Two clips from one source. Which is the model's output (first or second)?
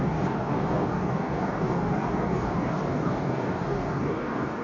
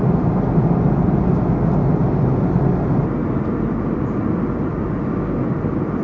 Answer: first